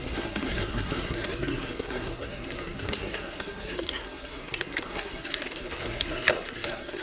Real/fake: fake